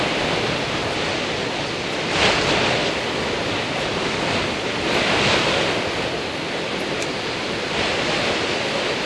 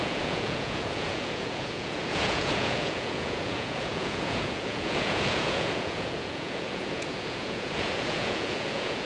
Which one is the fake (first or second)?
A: second